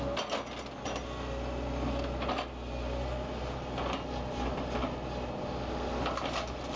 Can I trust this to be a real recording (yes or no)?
yes